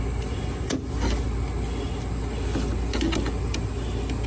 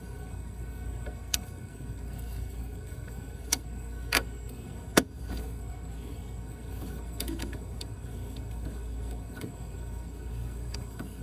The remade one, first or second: second